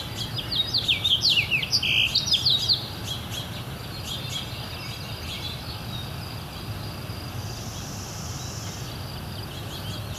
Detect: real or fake real